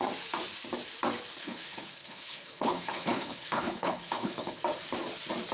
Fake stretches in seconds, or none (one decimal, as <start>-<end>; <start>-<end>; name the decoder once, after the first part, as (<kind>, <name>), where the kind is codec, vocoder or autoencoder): 1.4-4.6 (codec, HILCodec)